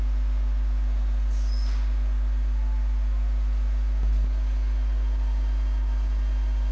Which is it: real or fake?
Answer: real